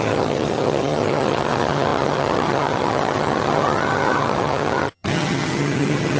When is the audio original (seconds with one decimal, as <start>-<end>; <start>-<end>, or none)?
none